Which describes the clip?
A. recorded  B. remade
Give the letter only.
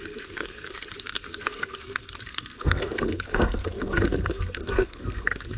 B